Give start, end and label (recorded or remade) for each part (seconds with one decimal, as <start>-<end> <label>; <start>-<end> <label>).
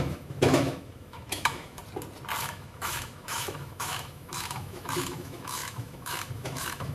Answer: 0.0-1.8 remade; 1.8-2.4 recorded; 2.4-6.9 remade